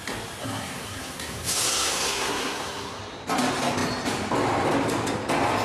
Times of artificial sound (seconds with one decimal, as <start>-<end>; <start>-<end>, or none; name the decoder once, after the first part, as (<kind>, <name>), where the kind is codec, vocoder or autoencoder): 0.4-3.0 (codec, SNAC)